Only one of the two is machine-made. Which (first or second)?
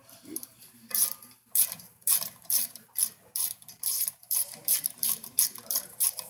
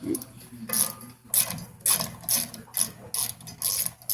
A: first